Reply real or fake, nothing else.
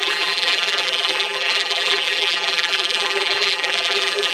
fake